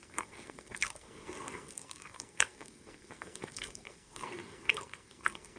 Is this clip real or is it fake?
fake